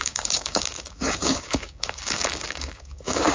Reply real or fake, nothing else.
fake